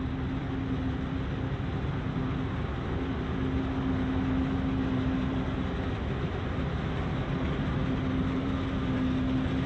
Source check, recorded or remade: recorded